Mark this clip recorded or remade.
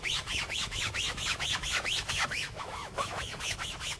remade